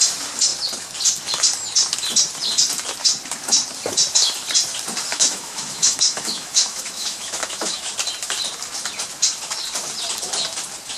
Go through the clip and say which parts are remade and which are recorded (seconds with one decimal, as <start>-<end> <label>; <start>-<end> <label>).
0.0-5.1 recorded; 5.1-7.9 remade; 7.9-11.0 recorded